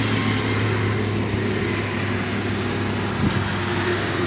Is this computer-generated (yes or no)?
no